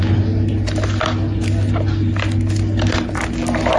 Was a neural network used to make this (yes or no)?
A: no